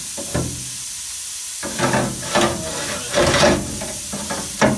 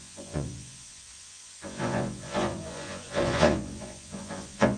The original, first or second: first